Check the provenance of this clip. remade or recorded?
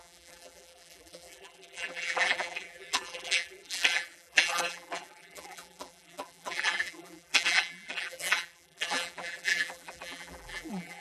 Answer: remade